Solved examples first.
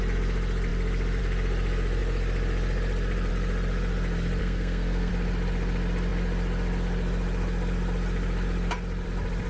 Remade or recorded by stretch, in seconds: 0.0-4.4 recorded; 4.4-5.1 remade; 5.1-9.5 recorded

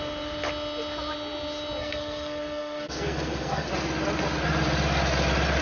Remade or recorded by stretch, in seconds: 0.0-1.8 recorded; 1.8-3.7 remade; 3.7-5.6 recorded

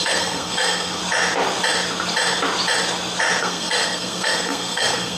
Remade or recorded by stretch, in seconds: 0.0-1.0 remade; 1.0-3.4 recorded; 3.4-5.2 remade

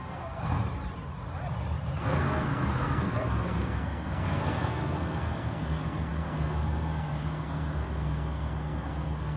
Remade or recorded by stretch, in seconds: 0.0-0.6 remade; 0.6-2.0 recorded; 2.0-9.4 remade

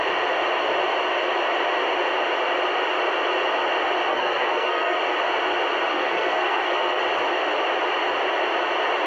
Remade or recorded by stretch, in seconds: 0.0-4.1 recorded; 4.1-5.0 remade; 5.0-5.9 recorded; 5.9-7.0 remade; 7.0-9.1 recorded